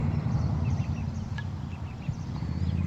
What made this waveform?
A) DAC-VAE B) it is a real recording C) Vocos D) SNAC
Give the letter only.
B